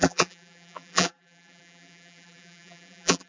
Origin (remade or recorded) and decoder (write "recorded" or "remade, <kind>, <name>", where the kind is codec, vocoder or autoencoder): remade, vocoder, BigVGAN v2